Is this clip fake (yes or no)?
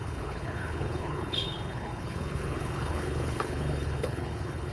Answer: yes